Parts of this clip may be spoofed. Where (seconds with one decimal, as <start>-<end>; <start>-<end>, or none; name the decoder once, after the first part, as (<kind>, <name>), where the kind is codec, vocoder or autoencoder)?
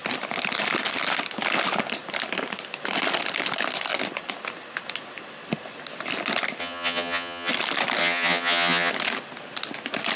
6.6-7.5 (vocoder, HiFi-GAN); 8.0-8.9